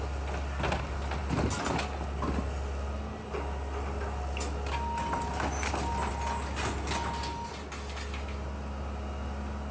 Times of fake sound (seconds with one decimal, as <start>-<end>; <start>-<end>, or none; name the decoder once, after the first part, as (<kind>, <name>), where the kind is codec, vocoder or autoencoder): none